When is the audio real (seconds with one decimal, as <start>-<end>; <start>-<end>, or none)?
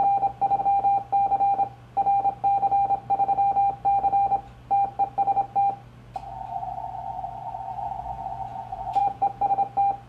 0.0-7.7; 9.5-10.1